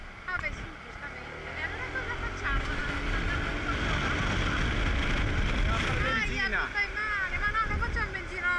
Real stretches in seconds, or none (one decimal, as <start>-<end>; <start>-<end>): 0.0-8.6